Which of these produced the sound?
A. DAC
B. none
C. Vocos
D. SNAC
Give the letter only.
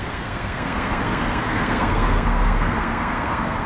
D